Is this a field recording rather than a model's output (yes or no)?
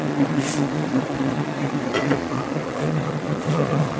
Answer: no